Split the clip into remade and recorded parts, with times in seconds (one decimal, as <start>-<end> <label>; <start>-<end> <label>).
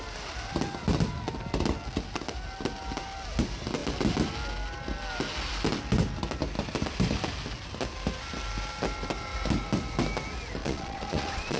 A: 0.0-10.6 recorded; 10.6-11.6 remade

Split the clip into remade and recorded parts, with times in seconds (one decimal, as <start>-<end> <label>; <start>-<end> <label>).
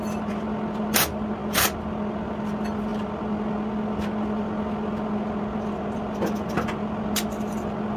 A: 0.0-8.0 recorded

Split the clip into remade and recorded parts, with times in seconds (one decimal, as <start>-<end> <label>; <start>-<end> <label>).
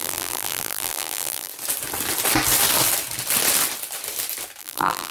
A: 0.0-1.5 remade; 1.5-4.6 recorded; 4.6-5.1 remade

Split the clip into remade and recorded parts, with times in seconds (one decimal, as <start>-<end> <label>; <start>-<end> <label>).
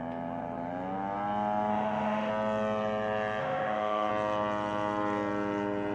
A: 0.0-1.7 recorded; 1.7-2.3 remade; 2.3-3.4 recorded; 3.4-4.1 remade; 4.1-5.9 recorded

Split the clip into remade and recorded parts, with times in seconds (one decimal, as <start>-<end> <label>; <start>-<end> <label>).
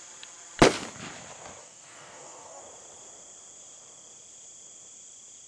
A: 0.0-1.6 recorded; 1.6-2.6 remade; 2.6-5.5 recorded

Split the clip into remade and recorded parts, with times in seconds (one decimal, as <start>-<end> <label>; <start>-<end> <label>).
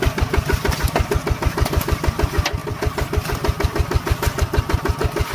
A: 0.0-2.6 recorded; 2.6-5.3 remade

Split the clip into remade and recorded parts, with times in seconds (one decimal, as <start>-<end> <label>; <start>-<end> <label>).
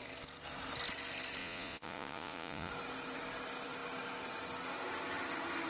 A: 0.0-1.4 recorded; 1.4-2.7 remade; 2.7-5.7 recorded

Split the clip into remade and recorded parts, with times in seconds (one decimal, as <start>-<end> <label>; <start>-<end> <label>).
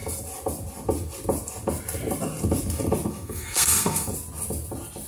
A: 0.0-3.1 recorded; 3.1-4.1 remade; 4.1-5.1 recorded